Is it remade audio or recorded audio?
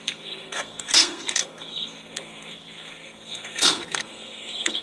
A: remade